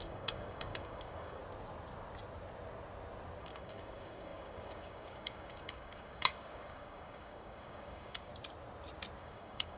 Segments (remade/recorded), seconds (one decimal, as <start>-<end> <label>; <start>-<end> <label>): 0.0-1.4 remade; 1.4-3.4 recorded; 3.4-8.3 remade; 8.3-9.2 recorded; 9.2-9.8 remade